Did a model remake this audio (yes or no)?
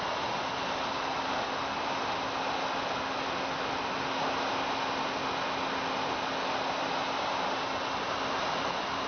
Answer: no